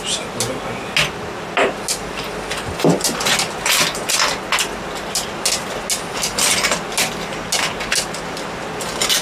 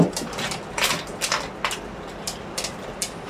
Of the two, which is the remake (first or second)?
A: second